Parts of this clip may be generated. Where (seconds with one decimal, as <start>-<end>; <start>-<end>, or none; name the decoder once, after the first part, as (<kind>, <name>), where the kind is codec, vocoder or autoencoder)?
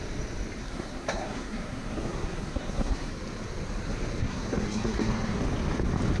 0.6-3.1 (codec, SNAC); 4.2-5.4